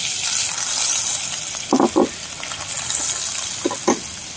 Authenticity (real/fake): real